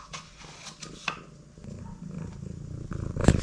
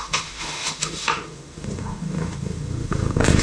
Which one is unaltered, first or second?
first